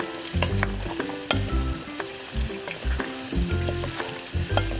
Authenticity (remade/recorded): recorded